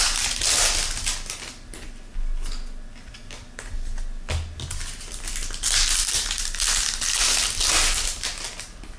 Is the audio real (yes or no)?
yes